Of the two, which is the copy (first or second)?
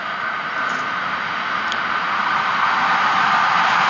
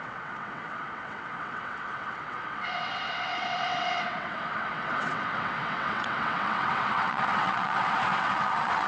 second